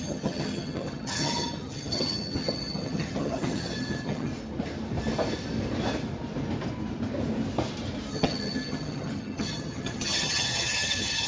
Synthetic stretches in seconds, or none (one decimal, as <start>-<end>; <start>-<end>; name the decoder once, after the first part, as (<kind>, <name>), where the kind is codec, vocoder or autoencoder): 0.0-4.3 (vocoder, HiFi-GAN); 8.1-11.3